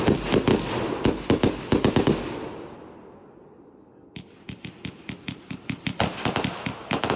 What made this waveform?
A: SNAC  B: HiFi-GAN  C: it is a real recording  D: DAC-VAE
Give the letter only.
C